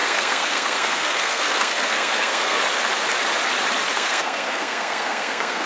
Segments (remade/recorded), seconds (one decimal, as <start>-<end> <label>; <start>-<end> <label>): 0.0-2.6 remade; 2.6-3.9 recorded; 3.9-5.7 remade